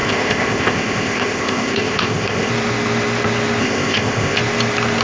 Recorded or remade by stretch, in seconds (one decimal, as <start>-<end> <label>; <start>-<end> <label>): 0.0-2.5 remade; 2.5-3.6 recorded; 3.6-4.4 remade; 4.4-5.0 recorded